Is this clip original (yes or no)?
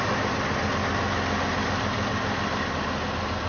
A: yes